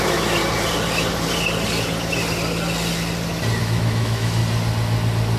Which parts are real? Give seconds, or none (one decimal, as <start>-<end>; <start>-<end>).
0.4-3.6; 4.4-5.4